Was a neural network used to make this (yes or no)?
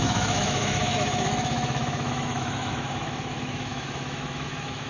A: yes